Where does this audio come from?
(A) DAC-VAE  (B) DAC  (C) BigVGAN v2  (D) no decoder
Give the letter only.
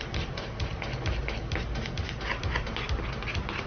D